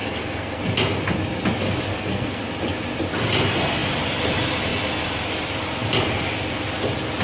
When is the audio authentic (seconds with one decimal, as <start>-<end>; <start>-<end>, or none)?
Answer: 0.6-1.9; 2.4-7.2

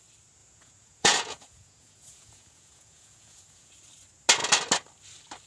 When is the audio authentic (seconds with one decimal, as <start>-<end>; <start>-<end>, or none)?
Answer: 0.0-0.4; 3.7-5.5

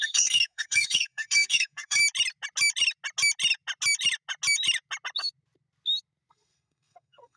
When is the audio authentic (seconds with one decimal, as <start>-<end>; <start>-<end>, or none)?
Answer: 2.0-6.3